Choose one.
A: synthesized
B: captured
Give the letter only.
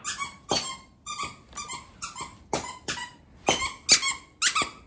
B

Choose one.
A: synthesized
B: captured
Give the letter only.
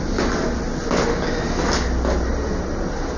B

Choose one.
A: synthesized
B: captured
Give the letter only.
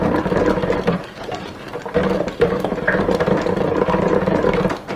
B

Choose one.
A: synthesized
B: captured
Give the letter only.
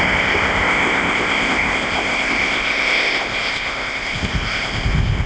A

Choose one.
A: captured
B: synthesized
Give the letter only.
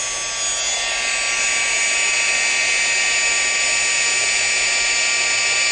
A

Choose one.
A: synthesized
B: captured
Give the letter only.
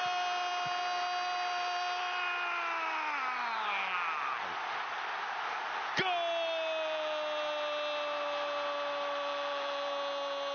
B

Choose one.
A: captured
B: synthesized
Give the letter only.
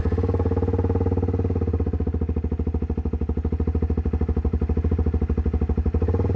A